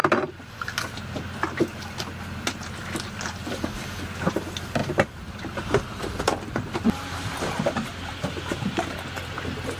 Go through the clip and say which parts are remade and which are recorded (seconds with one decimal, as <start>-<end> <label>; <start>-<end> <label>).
0.0-4.8 recorded; 4.8-5.6 remade; 5.6-6.0 recorded; 6.0-8.3 remade; 8.3-9.8 recorded